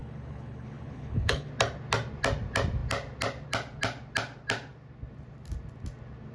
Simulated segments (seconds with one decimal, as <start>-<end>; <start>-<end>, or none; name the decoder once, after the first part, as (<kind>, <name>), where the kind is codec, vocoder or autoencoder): 0.0-1.5 (codec, HILCodec)